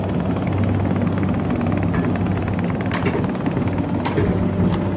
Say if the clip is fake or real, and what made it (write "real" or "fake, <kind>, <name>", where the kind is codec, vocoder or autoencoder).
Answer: real